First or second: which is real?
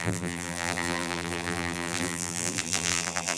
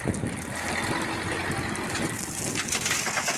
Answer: second